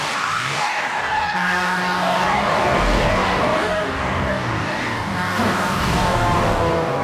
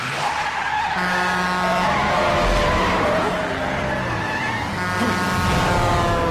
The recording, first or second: second